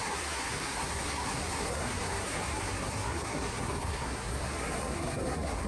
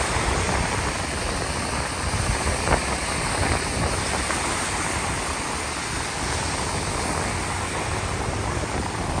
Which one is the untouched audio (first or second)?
second